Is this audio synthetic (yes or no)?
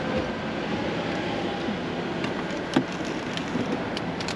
no